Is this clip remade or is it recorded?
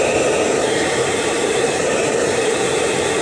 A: remade